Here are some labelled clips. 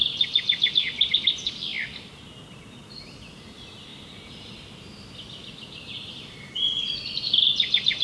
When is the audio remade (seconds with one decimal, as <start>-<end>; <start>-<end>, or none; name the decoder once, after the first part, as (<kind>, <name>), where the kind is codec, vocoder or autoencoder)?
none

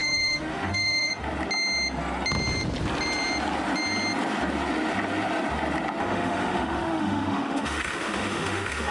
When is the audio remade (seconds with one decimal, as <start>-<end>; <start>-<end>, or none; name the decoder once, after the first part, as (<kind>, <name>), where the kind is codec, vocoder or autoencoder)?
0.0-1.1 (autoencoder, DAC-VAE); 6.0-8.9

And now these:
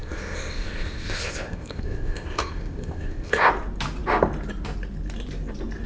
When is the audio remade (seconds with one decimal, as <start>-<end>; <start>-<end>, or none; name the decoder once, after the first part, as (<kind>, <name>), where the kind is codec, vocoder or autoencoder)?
0.0-3.5 (codec, ZipCodec)